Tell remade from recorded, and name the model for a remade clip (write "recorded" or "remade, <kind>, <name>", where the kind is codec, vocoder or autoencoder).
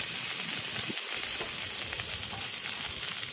recorded